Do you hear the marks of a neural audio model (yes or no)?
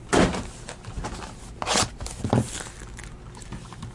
no